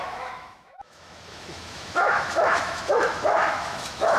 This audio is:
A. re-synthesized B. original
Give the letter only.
A